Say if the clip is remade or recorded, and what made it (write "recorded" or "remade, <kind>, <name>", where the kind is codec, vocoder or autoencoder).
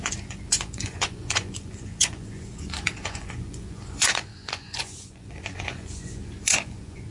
remade, vocoder, Vocos